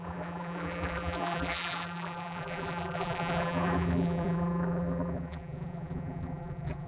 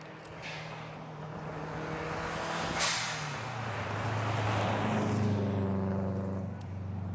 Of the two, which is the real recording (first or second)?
second